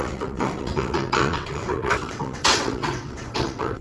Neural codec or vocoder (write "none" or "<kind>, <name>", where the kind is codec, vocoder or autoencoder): vocoder, WaveNeXt